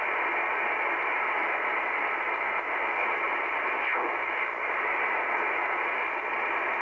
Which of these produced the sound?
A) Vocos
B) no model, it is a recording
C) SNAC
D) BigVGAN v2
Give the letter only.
B